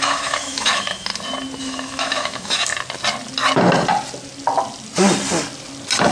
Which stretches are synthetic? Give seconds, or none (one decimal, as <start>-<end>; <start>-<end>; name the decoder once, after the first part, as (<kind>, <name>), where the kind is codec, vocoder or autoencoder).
0.0-1.1 (autoencoder, DAC-VAE); 1.6-2.7